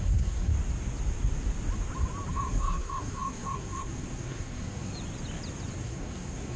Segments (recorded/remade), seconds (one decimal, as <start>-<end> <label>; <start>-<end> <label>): 0.0-0.5 remade; 0.5-2.3 recorded; 2.3-4.9 remade; 4.9-5.8 recorded; 5.8-6.6 remade